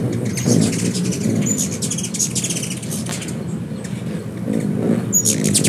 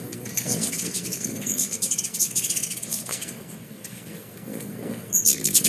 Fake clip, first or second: second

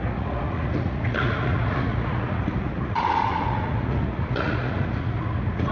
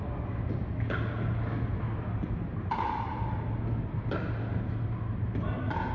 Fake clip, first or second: first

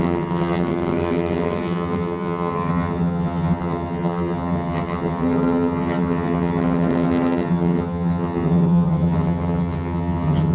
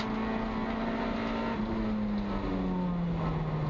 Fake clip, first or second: first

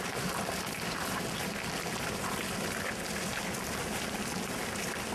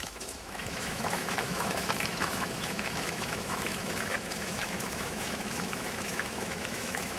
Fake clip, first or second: second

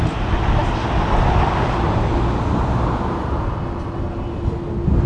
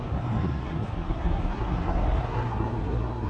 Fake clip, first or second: second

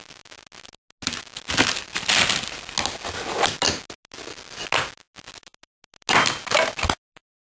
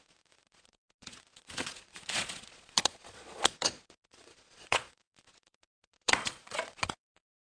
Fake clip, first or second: second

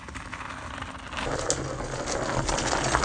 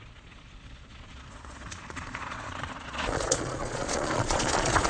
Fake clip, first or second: second